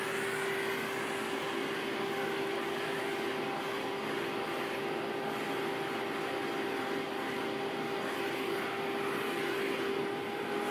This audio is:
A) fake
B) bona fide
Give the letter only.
B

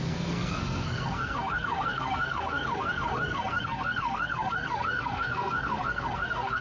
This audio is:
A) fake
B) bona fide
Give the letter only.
A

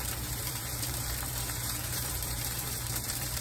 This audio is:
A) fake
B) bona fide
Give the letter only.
A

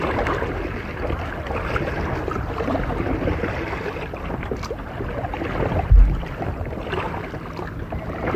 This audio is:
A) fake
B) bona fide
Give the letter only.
B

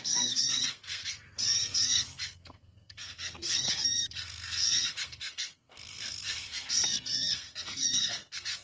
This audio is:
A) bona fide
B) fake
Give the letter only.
B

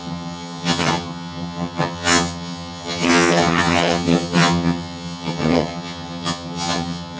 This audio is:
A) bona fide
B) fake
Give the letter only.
B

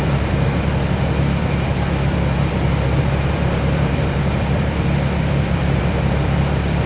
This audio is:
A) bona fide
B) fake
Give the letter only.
B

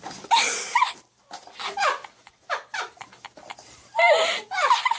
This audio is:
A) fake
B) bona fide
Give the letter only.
B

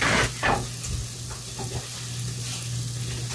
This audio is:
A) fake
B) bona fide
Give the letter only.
B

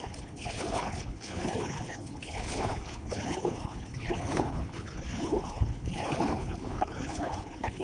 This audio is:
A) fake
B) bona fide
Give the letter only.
A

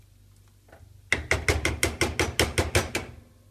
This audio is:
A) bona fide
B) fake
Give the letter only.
A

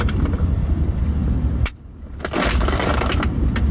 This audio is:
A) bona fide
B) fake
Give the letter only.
B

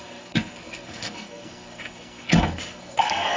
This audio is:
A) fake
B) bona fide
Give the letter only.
A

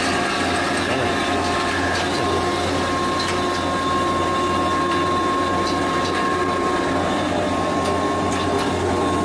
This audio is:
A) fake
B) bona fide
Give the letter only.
B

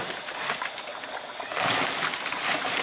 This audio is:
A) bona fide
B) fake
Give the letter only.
A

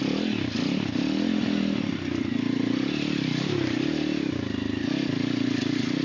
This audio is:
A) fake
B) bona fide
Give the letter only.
B